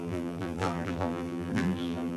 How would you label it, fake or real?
fake